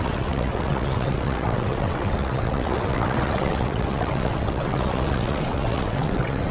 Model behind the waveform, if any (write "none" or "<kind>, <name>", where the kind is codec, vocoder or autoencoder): vocoder, WaveNeXt